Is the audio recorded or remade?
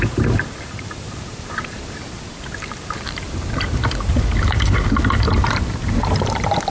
remade